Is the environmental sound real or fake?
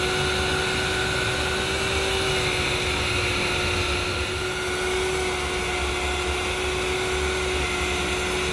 real